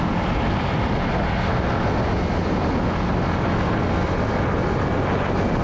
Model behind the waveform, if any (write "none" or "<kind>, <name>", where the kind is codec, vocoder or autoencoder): none